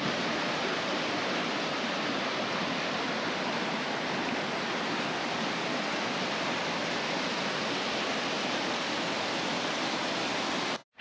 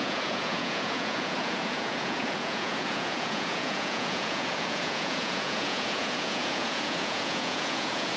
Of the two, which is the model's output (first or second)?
second